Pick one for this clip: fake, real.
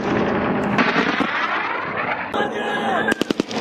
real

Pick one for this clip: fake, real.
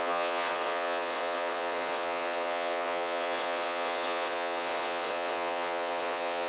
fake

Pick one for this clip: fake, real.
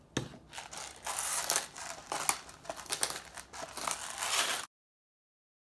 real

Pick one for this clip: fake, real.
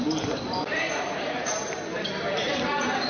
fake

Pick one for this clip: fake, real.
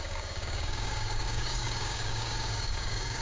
fake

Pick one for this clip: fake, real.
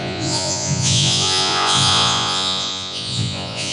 fake